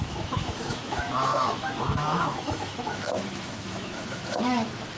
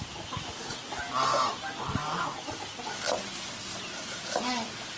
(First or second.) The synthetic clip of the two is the first